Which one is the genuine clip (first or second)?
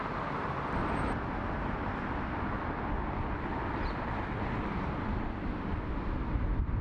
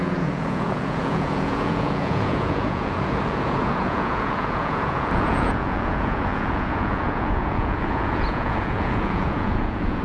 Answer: first